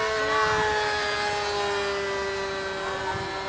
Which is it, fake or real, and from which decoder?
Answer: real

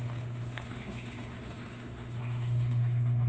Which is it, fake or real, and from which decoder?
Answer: fake, autoencoder, DAC-VAE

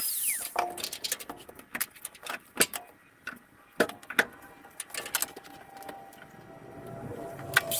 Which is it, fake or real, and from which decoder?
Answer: real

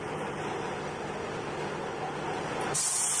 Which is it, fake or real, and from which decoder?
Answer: real